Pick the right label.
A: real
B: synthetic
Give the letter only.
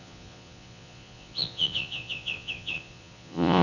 B